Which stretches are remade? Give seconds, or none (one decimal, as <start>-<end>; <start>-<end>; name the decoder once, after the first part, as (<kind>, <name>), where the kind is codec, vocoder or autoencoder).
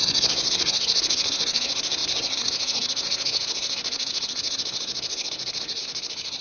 0.0-6.4 (codec, SNAC)